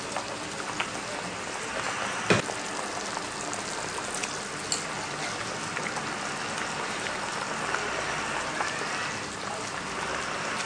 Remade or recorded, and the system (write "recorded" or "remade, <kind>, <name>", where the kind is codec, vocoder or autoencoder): recorded